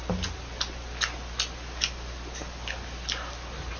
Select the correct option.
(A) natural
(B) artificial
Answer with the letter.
A